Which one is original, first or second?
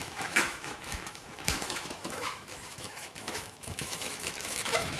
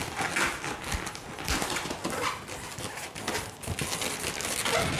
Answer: second